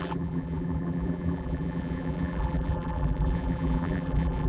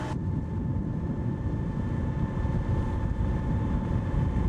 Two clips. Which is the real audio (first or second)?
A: second